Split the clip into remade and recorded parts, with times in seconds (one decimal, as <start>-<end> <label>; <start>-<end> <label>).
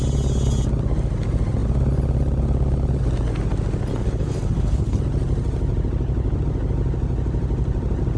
0.0-3.9 recorded; 3.9-5.0 remade; 5.0-8.2 recorded